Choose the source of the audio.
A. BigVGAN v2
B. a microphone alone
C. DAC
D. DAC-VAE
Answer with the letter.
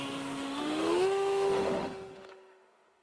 D